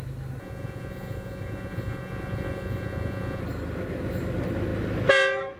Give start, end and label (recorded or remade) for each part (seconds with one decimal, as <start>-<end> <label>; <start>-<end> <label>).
0.0-0.4 recorded; 0.4-3.4 remade; 3.4-5.6 recorded